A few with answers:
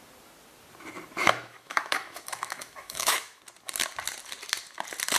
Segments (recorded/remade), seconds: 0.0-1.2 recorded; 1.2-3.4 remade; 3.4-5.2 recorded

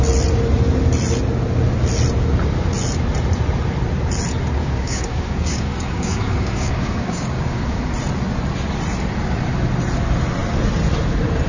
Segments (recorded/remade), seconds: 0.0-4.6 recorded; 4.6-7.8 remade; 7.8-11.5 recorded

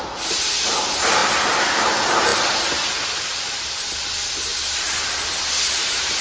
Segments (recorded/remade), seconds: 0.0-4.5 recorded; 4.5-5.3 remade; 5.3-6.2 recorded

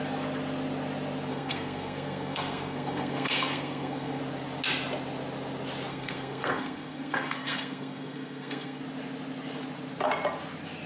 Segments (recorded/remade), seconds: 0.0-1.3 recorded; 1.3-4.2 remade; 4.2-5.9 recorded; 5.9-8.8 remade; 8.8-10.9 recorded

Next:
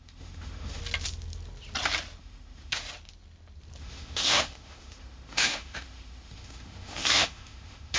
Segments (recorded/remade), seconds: 0.0-0.8 remade; 0.8-2.2 recorded; 2.2-2.8 remade; 2.8-3.8 recorded; 3.8-8.0 remade

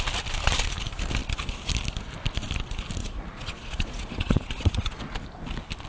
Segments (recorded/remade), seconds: 0.0-3.0 recorded; 3.0-5.0 remade; 5.0-5.9 recorded